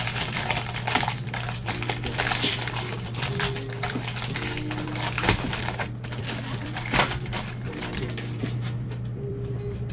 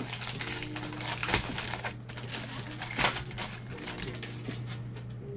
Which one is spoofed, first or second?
first